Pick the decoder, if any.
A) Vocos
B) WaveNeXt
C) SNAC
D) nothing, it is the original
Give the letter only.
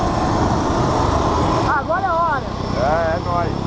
D